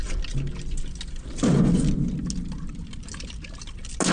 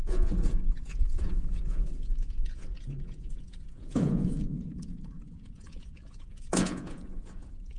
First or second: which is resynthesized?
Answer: second